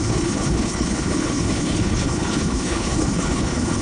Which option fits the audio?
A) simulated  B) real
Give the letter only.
A